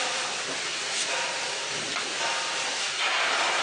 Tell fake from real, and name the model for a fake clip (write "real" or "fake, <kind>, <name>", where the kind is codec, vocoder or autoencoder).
real